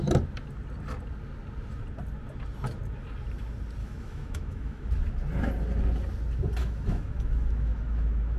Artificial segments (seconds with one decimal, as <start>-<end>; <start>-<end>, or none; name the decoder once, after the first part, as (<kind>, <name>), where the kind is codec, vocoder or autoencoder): 3.8-4.9 (autoencoder, DAC-VAE); 6.6-8.4